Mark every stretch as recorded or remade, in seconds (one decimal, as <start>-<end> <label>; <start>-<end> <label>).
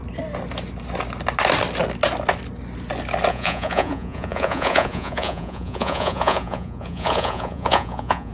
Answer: 0.0-3.3 recorded; 3.3-8.3 remade